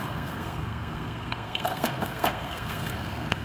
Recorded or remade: remade